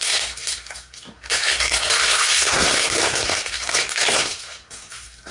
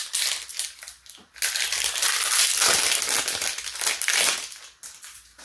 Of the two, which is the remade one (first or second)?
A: first